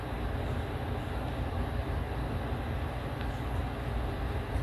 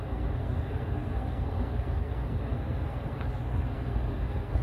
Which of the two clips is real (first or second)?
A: first